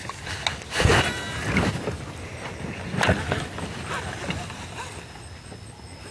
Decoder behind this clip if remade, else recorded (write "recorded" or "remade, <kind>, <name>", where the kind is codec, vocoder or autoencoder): recorded